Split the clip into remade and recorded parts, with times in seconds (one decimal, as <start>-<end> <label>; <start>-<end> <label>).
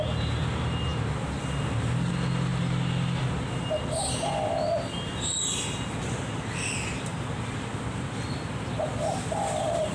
0.0-9.9 recorded